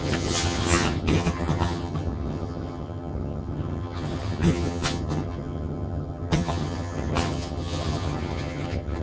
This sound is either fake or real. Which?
fake